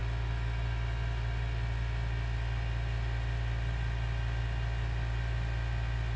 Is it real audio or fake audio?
real